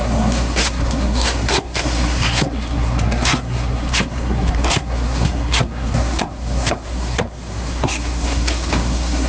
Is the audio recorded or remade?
remade